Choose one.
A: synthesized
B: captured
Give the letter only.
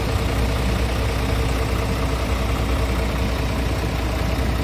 B